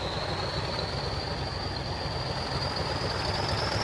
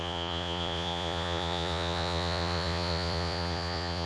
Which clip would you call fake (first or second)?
second